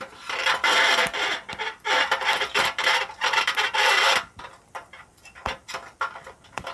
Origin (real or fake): fake